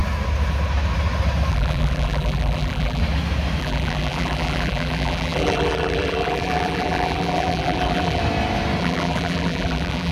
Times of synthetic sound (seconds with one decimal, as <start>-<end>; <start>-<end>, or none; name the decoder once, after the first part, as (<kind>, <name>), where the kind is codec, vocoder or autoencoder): 1.5-3.0 (vocoder, BigVGAN v2); 3.6-8.2; 8.8-10.1

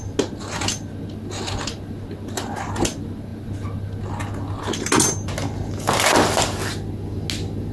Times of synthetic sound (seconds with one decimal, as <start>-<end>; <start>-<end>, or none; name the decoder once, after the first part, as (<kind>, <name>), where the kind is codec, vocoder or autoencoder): none

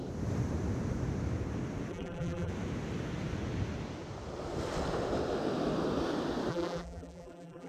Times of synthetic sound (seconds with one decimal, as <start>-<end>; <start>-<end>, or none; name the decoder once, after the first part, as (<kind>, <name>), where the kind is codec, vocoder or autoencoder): 1.9-2.5 (vocoder, BigVGAN v2); 6.5-7.7

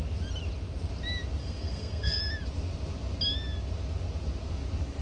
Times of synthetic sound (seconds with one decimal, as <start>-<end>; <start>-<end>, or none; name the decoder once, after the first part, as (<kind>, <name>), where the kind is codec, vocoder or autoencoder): 1.4-2.2 (codec, SNAC)

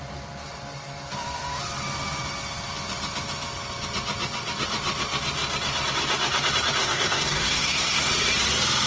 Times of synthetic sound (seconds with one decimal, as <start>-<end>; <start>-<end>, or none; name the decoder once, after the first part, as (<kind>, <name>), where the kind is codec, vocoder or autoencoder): 6.8-8.1 (codec, SNAC)

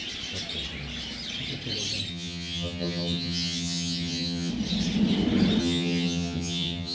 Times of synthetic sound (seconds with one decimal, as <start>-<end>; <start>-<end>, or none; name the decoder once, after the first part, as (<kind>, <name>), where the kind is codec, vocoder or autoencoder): 2.1-4.5 (vocoder, HiFi-GAN); 5.6-6.9

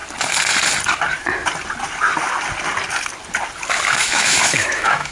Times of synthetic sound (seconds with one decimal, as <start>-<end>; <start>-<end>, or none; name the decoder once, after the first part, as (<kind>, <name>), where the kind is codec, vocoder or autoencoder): 4.0-5.1 (autoencoder, DAC-VAE)